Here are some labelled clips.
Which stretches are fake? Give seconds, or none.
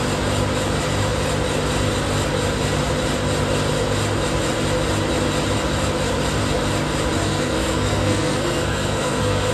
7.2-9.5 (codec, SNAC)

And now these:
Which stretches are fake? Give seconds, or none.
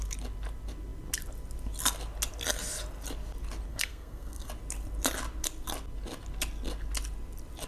3.7-4.5 (codec, SNAC)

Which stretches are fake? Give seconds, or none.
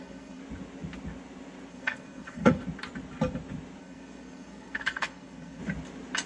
0.0-0.4 (codec, SNAC); 1.7-2.6; 3.8-5.6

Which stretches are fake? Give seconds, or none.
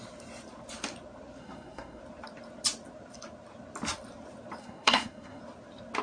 1.4-2.0 (codec, SNAC); 4.6-5.4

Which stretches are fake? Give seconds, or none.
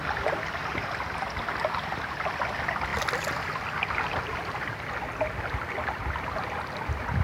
none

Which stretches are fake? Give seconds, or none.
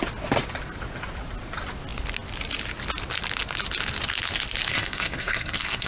4.7-5.9 (codec, SNAC)